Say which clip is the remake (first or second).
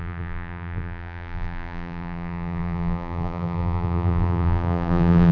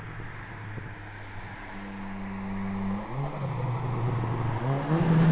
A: first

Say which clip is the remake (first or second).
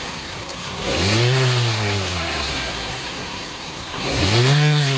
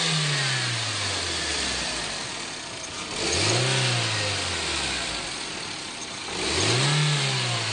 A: first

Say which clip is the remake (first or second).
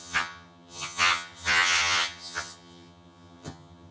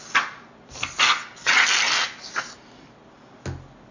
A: first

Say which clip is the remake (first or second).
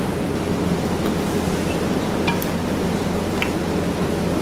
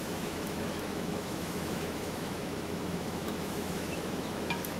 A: second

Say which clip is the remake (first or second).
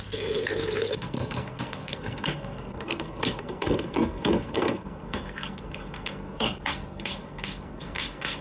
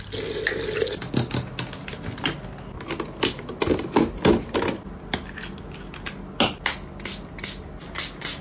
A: first